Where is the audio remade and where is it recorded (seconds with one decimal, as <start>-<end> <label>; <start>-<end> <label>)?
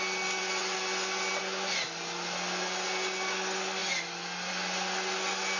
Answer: 0.0-5.6 recorded